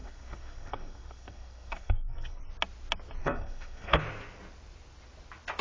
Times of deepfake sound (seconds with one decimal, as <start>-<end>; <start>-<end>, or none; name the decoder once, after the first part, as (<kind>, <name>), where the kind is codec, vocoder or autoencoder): 0.0-2.4 (codec, SNAC); 3.2-4.0